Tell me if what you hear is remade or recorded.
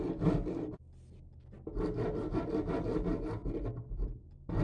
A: recorded